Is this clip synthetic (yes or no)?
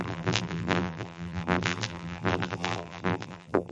yes